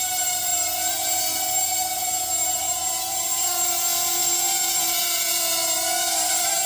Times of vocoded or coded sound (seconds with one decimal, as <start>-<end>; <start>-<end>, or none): 0.0-6.7